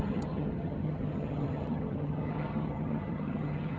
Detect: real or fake fake